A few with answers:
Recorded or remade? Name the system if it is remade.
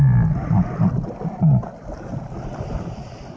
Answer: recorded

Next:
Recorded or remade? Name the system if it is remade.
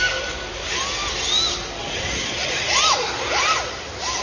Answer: recorded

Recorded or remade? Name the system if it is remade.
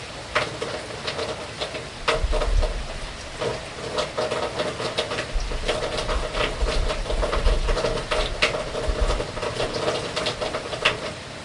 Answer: recorded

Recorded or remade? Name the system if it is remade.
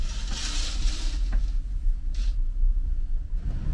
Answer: recorded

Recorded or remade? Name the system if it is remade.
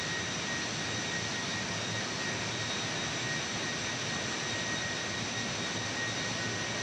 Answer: recorded